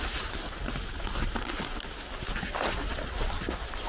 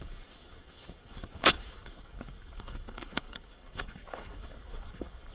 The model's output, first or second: second